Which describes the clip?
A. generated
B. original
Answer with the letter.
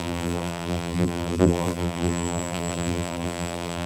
A